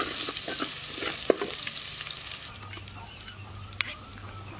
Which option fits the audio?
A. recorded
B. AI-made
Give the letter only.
A